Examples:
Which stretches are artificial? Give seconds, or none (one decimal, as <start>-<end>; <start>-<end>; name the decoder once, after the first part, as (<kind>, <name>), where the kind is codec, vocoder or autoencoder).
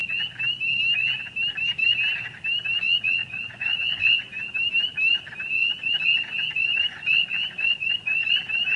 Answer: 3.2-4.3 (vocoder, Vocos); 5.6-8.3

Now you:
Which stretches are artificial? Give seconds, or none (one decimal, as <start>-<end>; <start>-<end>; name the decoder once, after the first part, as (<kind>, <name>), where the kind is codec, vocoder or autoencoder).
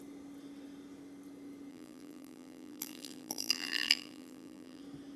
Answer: 1.7-4.8 (vocoder, BigVGAN v2)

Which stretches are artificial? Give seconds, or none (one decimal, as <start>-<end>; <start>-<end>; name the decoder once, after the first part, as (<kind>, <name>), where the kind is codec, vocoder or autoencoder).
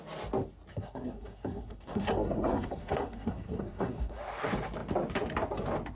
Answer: 0.7-4.2 (codec, SNAC)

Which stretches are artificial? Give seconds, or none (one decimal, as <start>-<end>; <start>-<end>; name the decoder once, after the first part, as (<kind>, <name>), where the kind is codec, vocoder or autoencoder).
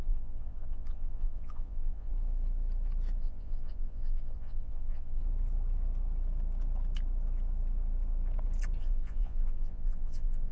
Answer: 0.0-2.1 (vocoder, Vocos); 3.2-5.2; 8.8-10.5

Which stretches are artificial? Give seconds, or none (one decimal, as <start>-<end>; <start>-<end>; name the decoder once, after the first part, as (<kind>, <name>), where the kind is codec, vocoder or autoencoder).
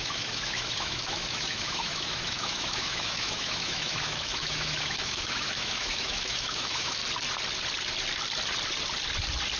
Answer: 0.0-7.0 (autoencoder, DAC-VAE)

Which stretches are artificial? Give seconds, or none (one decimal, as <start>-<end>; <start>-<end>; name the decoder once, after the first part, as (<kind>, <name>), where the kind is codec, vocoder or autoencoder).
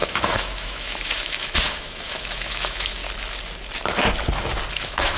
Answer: 0.0-3.0 (autoencoder, DAC-VAE); 4.7-5.2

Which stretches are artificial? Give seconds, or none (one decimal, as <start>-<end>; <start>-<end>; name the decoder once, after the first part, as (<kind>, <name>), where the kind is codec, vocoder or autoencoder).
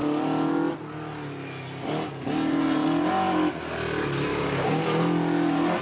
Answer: 4.3-4.8 (codec, DAC)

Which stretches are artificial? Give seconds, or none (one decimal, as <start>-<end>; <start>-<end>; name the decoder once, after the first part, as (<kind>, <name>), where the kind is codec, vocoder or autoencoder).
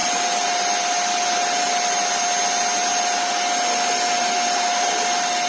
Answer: 0.0-2.2 (vocoder, BigVGAN v2)